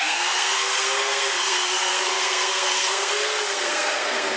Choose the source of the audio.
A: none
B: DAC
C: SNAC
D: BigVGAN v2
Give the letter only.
C